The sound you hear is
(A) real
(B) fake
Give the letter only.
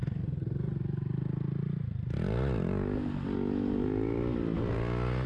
A